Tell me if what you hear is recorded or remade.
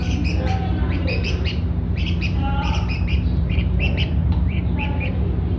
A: remade